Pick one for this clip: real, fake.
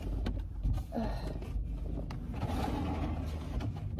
real